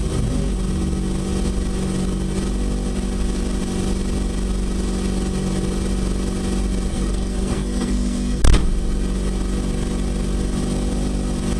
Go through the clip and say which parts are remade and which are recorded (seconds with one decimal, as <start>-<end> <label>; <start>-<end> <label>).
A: 0.0-6.9 recorded; 6.9-8.4 remade; 8.4-11.6 recorded